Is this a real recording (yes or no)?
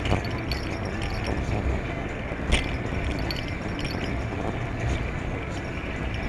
yes